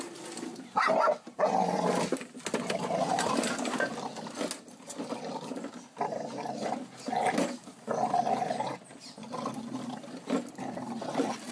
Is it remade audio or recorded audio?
recorded